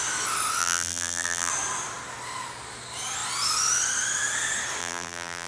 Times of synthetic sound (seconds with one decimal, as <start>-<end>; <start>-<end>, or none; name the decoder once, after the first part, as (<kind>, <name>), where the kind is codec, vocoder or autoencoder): 0.6-1.5 (vocoder, BigVGAN v2); 4.8-5.5